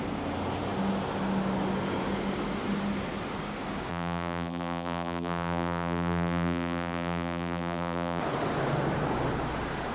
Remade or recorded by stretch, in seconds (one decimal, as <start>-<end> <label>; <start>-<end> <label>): 0.0-3.9 recorded; 3.9-8.2 remade; 8.2-9.9 recorded

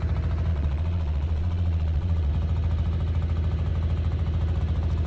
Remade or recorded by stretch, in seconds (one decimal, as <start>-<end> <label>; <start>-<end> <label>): 0.0-0.5 recorded; 0.5-2.3 remade; 2.3-5.1 recorded